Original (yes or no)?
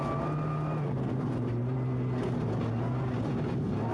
yes